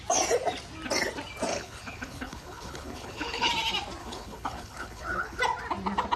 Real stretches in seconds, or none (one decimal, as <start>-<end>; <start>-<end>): 0.0-1.5; 3.5-4.0; 5.4-6.2